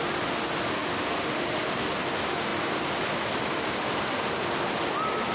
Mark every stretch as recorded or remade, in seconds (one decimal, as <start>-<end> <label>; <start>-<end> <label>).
0.0-0.8 recorded; 0.8-2.1 remade; 2.1-2.5 recorded; 2.5-4.0 remade; 4.0-5.3 recorded